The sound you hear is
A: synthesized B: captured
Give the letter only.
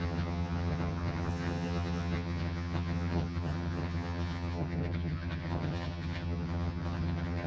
A